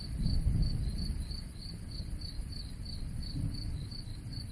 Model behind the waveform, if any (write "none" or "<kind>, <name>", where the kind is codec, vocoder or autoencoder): none